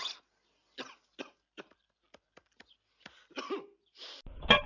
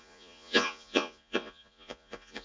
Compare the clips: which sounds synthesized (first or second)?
second